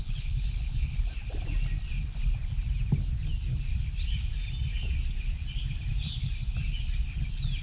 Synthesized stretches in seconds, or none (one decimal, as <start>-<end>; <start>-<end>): 0.0-1.0